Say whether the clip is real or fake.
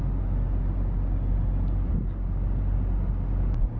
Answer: real